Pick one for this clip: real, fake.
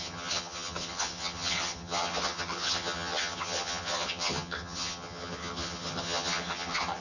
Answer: fake